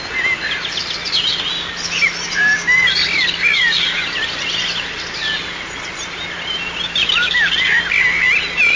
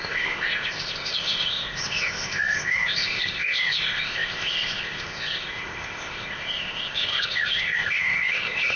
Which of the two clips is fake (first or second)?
second